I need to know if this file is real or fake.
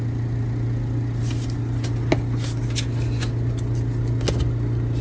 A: real